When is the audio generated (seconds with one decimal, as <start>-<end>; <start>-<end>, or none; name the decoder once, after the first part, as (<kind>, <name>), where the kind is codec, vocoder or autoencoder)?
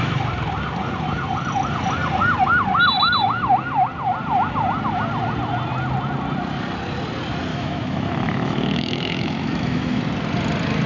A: 7.5-10.0 (autoencoder, DAC-VAE)